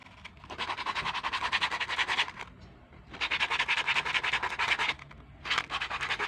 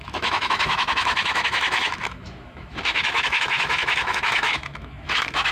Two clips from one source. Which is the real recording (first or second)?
first